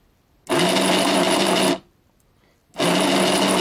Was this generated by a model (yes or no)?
no